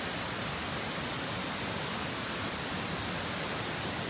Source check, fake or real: real